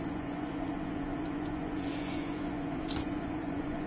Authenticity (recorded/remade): remade